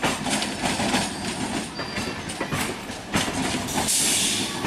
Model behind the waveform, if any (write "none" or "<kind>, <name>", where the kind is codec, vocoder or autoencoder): none